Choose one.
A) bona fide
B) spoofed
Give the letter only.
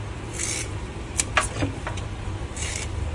B